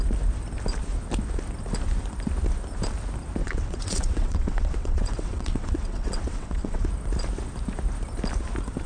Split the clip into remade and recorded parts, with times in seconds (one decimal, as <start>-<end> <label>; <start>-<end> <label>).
0.0-3.4 recorded; 3.4-6.9 remade; 6.9-8.9 recorded

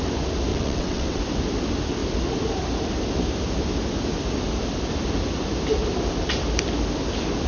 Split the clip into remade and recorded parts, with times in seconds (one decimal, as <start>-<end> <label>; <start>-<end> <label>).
0.0-0.5 recorded; 0.5-1.2 remade; 1.2-7.5 recorded